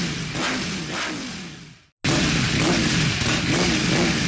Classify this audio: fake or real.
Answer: real